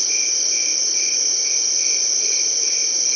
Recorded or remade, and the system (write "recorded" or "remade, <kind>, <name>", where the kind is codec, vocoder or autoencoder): remade, vocoder, BigVGAN v2